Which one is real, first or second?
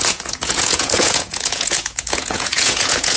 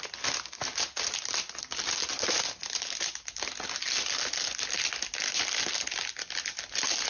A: second